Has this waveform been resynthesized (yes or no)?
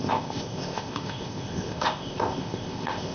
yes